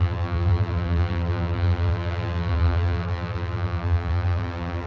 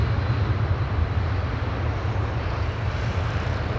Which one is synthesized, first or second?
first